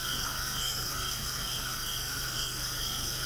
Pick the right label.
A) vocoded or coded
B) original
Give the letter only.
A